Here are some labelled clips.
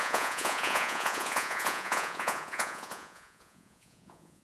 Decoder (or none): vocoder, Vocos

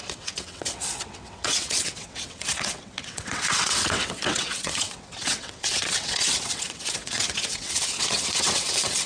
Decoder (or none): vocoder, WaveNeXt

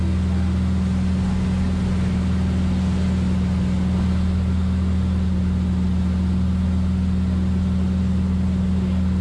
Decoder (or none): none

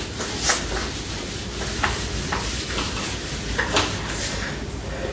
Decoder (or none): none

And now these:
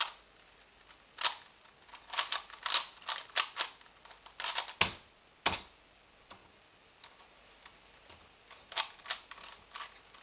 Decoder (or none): none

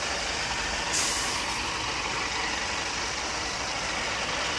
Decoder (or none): none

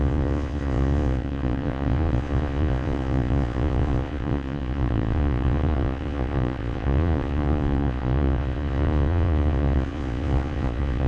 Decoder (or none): vocoder, Vocos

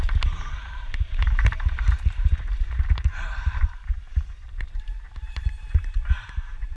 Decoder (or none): vocoder, BigVGAN v2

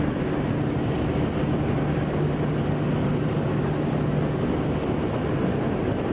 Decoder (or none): none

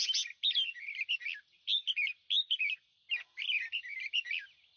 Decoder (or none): none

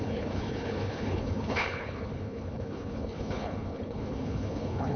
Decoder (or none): codec, HILCodec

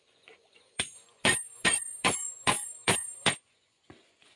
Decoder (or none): vocoder, Vocos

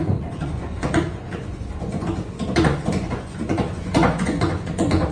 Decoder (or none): vocoder, Vocos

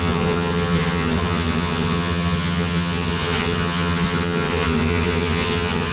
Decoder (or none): vocoder, HiFi-GAN